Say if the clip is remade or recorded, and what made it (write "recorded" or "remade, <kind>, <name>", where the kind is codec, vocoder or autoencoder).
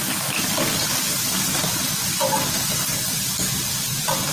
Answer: recorded